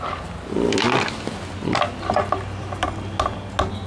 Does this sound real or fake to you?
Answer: real